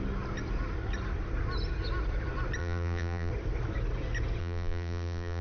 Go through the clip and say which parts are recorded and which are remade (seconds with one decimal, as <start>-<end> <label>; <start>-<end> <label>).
0.0-2.6 recorded; 2.6-3.3 remade; 3.3-4.4 recorded; 4.4-5.4 remade